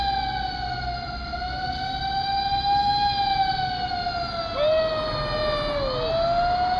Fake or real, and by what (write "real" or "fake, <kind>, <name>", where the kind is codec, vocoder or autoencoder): real